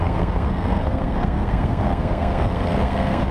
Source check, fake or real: fake